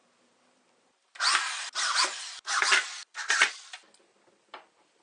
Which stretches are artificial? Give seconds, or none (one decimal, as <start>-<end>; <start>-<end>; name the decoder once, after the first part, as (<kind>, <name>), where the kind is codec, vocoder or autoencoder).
0.0-5.0 (vocoder, BigVGAN v2)